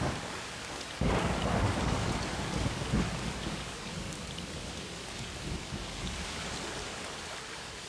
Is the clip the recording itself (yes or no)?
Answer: no